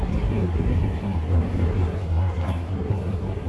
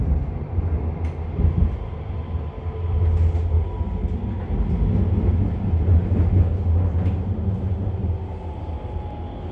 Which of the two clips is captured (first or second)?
second